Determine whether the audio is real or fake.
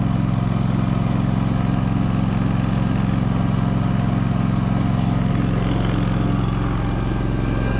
real